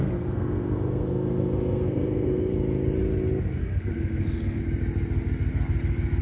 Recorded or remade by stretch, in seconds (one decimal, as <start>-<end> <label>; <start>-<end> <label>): 0.0-2.5 remade; 2.5-3.6 recorded; 3.6-4.6 remade; 4.6-6.2 recorded